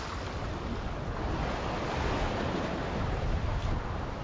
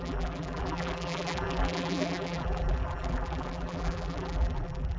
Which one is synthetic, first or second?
second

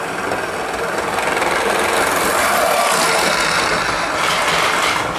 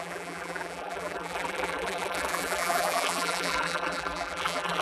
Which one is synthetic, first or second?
second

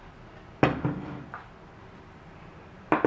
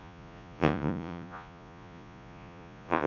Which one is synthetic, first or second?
second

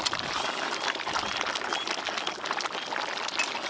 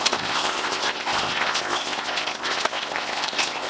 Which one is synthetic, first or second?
second